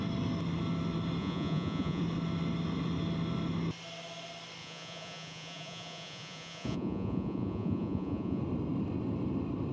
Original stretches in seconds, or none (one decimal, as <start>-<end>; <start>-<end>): 0.0-1.2; 2.0-4.6; 8.4-9.7